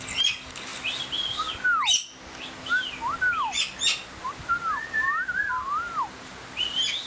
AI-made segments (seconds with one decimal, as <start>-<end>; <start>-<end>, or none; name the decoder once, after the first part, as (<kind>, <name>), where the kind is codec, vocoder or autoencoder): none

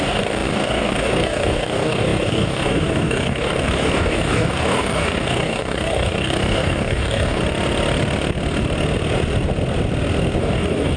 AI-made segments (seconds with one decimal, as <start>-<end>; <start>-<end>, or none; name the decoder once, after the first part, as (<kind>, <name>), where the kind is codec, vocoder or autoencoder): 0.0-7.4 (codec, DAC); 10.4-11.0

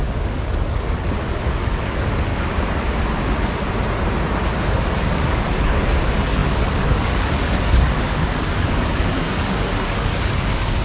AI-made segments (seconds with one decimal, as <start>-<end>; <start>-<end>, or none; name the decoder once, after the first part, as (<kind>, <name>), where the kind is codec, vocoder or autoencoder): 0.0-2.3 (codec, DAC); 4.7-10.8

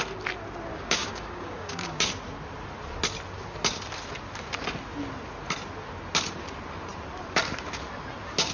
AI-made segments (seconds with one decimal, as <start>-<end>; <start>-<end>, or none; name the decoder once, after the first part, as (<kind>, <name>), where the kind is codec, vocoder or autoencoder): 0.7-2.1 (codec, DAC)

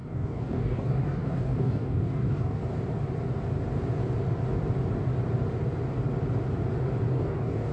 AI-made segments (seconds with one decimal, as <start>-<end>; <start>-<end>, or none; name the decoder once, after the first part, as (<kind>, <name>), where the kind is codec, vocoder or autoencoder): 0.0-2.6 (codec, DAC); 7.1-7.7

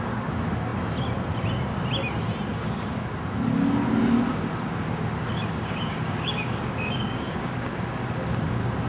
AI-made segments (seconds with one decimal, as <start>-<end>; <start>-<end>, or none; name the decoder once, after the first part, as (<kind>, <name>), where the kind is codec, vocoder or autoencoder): 2.5-3.1 (codec, DAC); 5.5-7.5

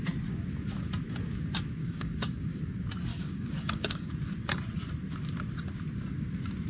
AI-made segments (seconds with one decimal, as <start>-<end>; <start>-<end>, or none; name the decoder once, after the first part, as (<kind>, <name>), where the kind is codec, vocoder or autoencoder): 1.8-2.6 (codec, DAC); 3.1-4.1